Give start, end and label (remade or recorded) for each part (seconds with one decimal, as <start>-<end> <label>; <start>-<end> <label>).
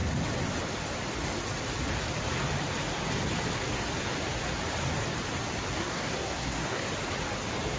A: 0.0-5.8 recorded; 5.8-6.9 remade; 6.9-7.8 recorded